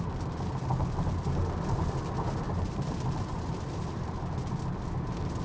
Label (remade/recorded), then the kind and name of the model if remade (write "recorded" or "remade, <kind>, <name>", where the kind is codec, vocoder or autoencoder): recorded